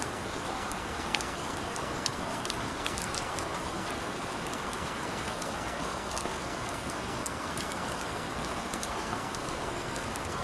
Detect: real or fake fake